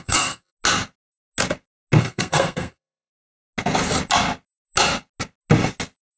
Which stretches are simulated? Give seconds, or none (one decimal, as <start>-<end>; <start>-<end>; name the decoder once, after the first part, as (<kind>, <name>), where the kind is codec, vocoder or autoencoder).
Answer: 0.0-0.5 (codec, SNAC); 2.0-3.1

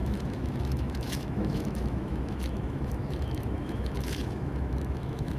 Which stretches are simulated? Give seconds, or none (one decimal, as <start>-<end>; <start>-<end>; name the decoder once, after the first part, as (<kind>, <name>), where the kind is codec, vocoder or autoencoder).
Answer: 0.0-5.4 (autoencoder, DAC-VAE)

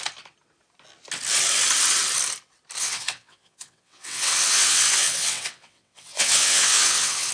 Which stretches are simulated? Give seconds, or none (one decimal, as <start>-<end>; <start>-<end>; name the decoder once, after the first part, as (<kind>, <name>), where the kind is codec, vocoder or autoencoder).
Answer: 2.8-7.3 (vocoder, WaveNeXt)

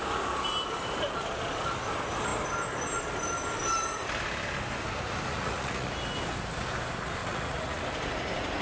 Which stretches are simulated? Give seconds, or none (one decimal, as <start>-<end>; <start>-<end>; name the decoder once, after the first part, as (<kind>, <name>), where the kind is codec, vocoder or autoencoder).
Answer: 5.3-5.9 (vocoder, Vocos); 7.2-7.8